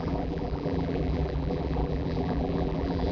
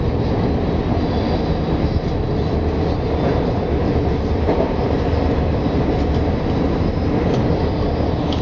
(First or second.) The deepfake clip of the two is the first